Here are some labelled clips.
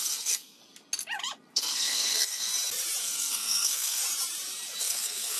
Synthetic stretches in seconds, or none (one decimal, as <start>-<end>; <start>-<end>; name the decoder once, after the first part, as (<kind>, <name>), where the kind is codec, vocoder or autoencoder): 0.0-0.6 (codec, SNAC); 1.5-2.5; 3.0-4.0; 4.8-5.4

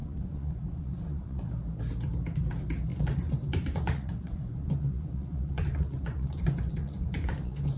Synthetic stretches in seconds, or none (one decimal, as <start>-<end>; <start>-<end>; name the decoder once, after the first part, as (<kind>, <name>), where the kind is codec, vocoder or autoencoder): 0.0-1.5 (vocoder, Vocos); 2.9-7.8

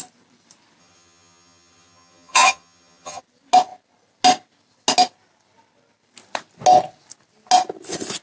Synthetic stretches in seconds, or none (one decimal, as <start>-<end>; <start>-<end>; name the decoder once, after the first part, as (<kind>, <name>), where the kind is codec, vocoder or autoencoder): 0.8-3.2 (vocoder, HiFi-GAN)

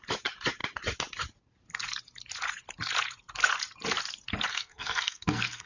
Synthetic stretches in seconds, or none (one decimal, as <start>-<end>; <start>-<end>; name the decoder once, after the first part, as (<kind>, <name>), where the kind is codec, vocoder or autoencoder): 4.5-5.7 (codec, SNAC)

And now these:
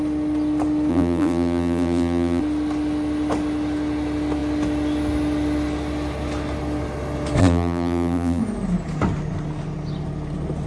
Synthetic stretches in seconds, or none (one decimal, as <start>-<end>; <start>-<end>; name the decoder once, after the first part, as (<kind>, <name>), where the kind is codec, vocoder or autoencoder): 0.9-2.4 (vocoder, BigVGAN v2); 7.4-8.4